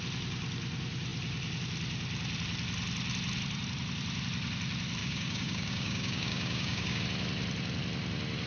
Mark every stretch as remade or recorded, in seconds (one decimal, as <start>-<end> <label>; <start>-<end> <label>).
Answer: 0.0-5.0 recorded; 5.0-7.0 remade; 7.0-8.5 recorded